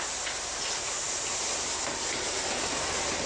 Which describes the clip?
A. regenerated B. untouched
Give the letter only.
B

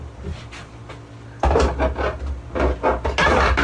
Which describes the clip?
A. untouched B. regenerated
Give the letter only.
A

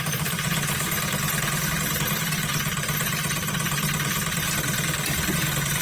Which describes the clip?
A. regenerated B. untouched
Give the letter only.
A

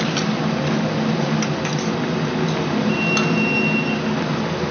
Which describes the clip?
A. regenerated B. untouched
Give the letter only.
B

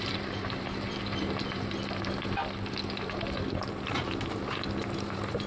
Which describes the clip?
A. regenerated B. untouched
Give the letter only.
B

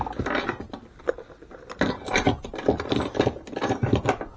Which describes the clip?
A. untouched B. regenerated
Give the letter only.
A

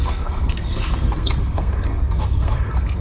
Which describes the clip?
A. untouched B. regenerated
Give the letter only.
B